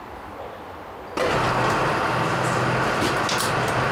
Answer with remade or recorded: recorded